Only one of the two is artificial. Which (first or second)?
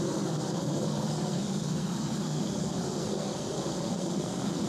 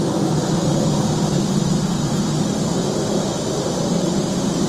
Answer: first